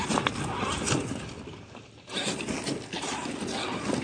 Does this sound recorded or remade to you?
recorded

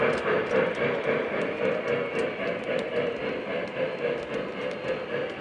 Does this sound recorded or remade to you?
recorded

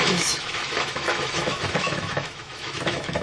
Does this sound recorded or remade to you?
remade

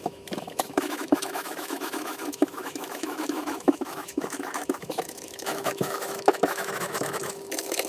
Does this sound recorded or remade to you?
remade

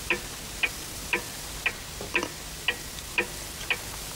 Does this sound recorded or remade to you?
recorded